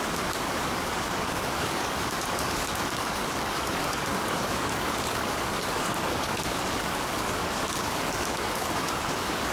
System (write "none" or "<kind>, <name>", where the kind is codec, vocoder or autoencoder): codec, DAC